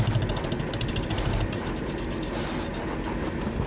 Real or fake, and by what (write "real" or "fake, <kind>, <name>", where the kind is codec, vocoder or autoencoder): real